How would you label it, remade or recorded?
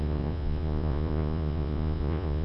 remade